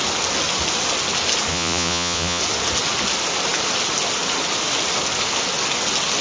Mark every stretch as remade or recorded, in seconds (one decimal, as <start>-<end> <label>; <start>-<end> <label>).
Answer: 0.0-1.5 recorded; 1.5-2.4 remade; 2.4-6.2 recorded

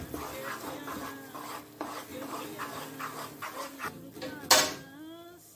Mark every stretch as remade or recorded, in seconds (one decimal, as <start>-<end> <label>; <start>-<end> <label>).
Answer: 0.0-5.6 recorded